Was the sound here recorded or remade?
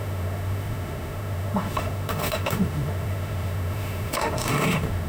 remade